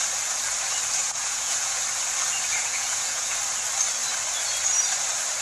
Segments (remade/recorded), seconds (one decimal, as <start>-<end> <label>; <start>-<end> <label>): 0.0-1.0 recorded; 1.0-1.8 remade; 1.8-2.5 recorded; 2.5-3.4 remade; 3.4-5.4 recorded